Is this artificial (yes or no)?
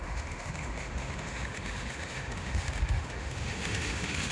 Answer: yes